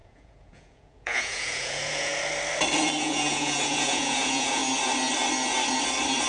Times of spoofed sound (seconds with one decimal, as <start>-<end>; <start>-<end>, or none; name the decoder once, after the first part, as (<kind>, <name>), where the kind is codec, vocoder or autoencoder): 0.0-2.1 (vocoder, Vocos); 3.0-4.6